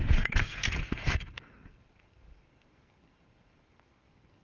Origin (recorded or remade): remade